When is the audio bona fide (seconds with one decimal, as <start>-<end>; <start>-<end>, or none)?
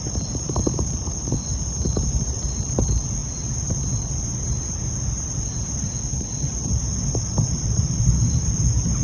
0.0-9.0